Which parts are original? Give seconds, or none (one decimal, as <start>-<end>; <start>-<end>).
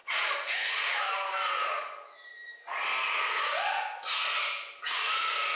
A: 0.0-5.5